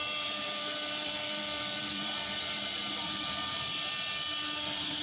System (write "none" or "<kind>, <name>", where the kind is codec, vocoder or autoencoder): vocoder, BigVGAN v2